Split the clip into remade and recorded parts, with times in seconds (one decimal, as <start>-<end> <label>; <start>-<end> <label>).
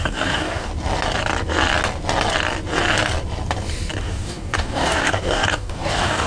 0.0-0.7 remade; 0.7-4.0 recorded; 4.0-6.3 remade